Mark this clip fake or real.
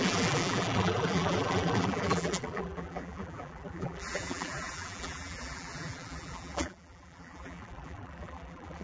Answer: fake